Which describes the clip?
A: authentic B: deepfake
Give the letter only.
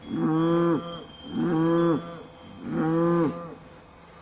A